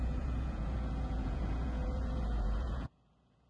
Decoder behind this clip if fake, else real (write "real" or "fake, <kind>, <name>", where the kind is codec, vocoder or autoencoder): fake, vocoder, Vocos